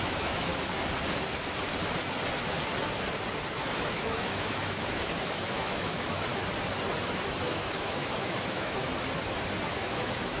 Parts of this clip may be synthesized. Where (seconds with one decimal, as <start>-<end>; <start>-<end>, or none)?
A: 0.0-0.5; 3.5-6.3; 7.4-8.9; 9.7-10.4